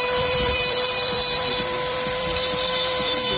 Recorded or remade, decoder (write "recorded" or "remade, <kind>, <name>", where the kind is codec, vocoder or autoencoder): remade, vocoder, BigVGAN v2